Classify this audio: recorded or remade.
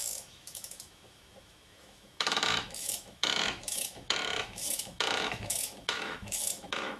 remade